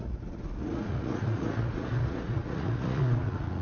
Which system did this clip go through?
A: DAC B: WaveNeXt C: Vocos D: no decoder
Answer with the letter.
C